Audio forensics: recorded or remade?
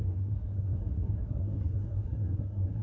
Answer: remade